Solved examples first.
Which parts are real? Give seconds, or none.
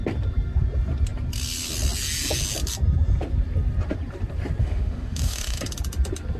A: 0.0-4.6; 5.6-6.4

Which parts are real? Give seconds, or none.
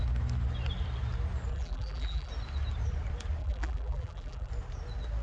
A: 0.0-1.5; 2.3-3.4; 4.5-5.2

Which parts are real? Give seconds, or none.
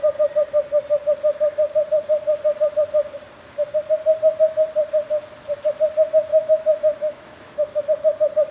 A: 0.0-6.3; 7.8-8.5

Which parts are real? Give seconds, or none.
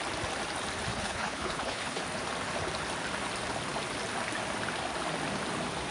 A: 0.0-0.9; 2.0-5.9